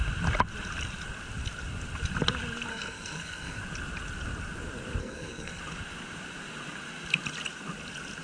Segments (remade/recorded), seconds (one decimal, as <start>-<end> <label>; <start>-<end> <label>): 0.0-2.7 recorded; 2.7-3.6 remade; 3.6-5.0 recorded; 5.0-5.6 remade; 5.6-8.2 recorded